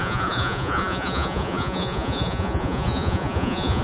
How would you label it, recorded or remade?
remade